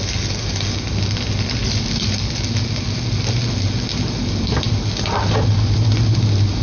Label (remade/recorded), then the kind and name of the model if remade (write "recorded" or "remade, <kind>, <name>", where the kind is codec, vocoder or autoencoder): recorded